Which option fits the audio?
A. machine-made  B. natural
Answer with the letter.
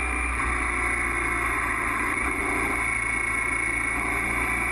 B